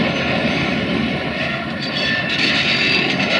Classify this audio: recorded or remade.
recorded